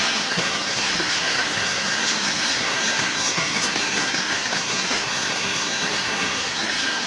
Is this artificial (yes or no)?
yes